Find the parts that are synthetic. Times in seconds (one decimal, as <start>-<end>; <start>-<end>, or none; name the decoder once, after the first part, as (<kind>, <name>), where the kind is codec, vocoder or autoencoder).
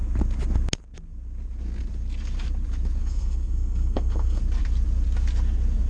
3.0-4.4 (codec, SNAC)